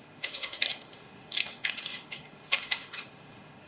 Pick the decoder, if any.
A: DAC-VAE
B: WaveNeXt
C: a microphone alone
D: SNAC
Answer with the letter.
A